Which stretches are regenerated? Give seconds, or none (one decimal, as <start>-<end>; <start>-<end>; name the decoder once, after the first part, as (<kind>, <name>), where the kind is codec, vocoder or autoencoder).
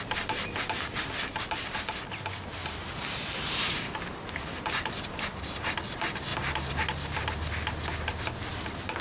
2.6-5.6 (vocoder, BigVGAN v2); 6.3-6.8